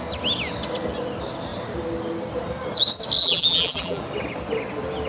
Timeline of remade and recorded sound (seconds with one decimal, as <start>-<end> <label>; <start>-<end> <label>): 0.0-3.2 recorded; 3.2-4.0 remade; 4.0-5.1 recorded